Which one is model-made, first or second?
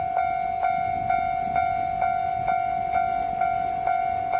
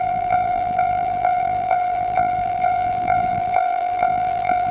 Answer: second